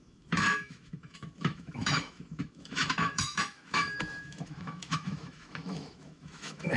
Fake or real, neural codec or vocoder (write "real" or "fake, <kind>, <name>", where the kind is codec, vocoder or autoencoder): fake, autoencoder, DAC-VAE